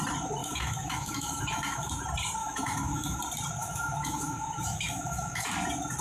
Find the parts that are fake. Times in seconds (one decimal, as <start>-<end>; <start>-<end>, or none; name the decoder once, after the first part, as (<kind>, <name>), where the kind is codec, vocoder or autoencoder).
0.4-1.9 (autoencoder, DAC-VAE); 2.4-3.2; 3.6-5.5